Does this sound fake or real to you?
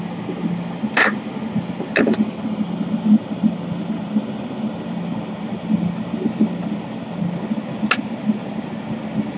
real